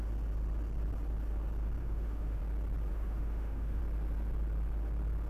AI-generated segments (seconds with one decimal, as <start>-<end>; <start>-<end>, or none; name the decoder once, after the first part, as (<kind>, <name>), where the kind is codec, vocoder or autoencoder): 1.8-2.4 (autoencoder, DAC-VAE); 2.9-3.8

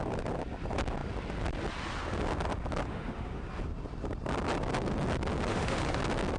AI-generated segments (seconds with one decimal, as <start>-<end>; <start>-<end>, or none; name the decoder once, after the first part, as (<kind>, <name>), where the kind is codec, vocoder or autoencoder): 2.9-3.4 (autoencoder, DAC-VAE); 5.5-6.0

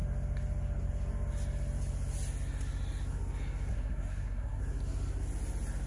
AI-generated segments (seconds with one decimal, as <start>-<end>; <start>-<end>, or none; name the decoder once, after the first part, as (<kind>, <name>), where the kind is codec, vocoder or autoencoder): 3.7-4.6 (codec, SNAC)